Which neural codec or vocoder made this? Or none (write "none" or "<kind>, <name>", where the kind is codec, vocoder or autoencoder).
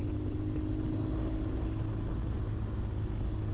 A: none